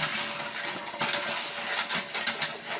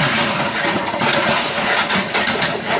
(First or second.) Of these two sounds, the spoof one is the second